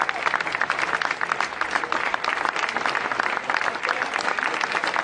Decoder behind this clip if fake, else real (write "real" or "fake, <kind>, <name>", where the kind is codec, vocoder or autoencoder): real